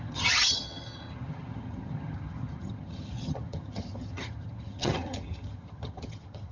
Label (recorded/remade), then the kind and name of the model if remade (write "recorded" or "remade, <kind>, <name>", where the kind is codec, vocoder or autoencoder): remade, vocoder, HiFi-GAN